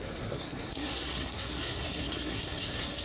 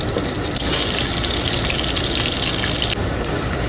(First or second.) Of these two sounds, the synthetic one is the first